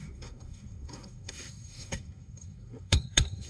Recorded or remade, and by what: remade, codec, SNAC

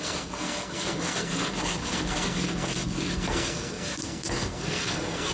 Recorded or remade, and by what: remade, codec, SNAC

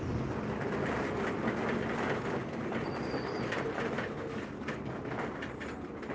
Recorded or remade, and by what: recorded